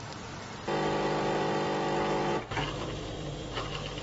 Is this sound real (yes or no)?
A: no